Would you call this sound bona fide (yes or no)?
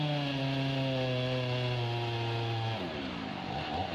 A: yes